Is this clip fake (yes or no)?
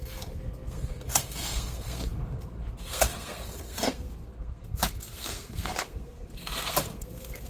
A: yes